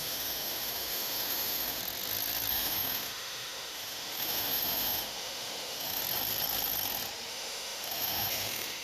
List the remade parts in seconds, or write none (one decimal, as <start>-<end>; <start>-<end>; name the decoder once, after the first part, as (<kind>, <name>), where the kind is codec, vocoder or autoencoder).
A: 0.0-1.8 (autoencoder, DAC-VAE); 2.5-6.0; 7.3-8.8